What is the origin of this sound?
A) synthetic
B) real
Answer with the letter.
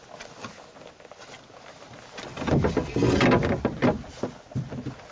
B